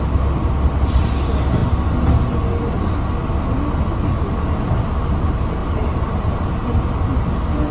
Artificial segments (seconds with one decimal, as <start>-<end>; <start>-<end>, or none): 5.6-6.5